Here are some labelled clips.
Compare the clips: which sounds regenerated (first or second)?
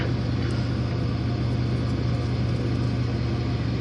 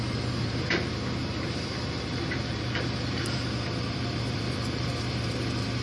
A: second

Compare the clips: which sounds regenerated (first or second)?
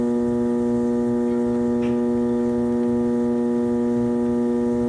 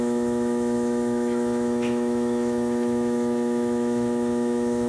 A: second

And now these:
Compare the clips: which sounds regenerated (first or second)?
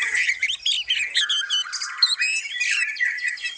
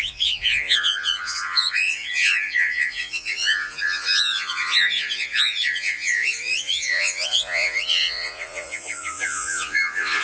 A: second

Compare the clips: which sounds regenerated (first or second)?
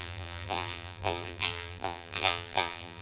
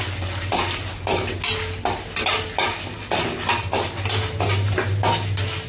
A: first